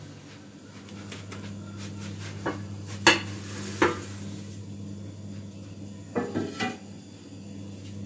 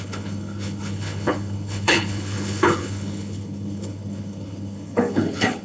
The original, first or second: first